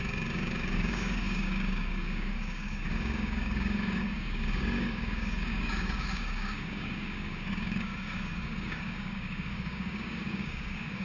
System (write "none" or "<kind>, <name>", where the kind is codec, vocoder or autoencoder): codec, DAC